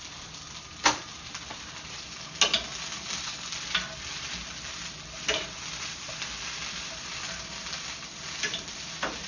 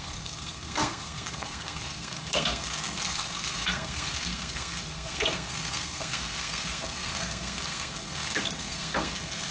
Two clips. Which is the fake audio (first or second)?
second